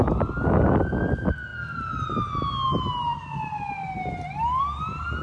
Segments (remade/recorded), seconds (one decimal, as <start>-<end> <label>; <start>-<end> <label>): 0.0-5.2 recorded